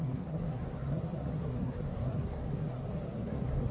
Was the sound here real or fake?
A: fake